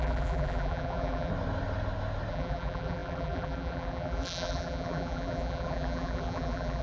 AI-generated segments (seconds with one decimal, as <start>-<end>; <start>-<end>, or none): 0.0-1.3; 2.3-6.8